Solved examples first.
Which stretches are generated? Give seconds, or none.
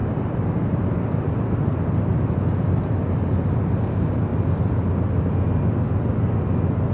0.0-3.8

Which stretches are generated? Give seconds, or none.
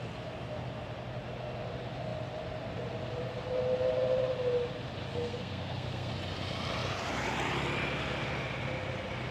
5.1-6.1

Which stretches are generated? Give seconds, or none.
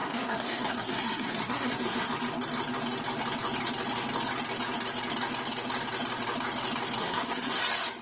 0.0-2.1; 7.0-7.6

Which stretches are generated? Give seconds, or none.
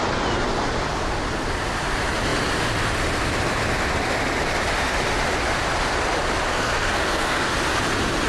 6.5-7.5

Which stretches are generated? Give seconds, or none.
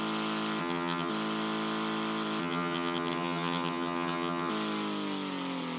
0.6-1.1; 2.4-4.5